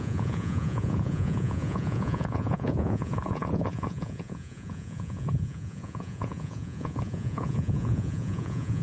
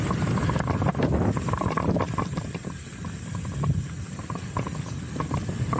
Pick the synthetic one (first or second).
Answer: first